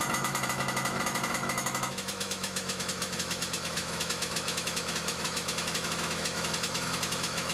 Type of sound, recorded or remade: remade